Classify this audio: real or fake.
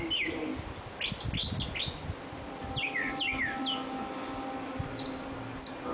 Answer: real